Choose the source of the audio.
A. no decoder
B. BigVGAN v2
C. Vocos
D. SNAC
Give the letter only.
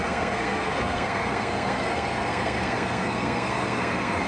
D